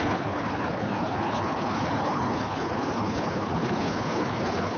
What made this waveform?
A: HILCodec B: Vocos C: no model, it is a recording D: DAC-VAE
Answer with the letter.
A